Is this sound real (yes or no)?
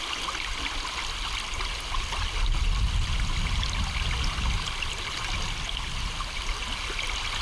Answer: yes